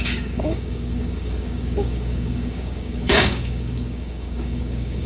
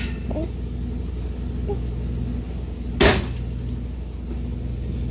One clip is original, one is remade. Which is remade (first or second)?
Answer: first